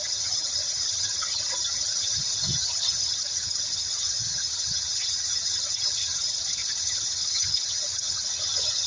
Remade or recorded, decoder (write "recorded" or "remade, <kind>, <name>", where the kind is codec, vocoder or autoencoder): remade, vocoder, HiFi-GAN